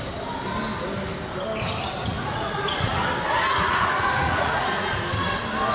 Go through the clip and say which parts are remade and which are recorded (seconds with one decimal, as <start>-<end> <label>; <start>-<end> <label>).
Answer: 0.0-2.0 recorded; 2.0-3.0 remade; 3.0-3.6 recorded; 3.6-4.9 remade; 4.9-5.7 recorded